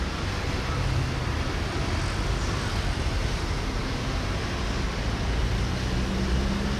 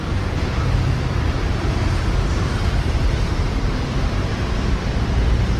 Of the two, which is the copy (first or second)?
second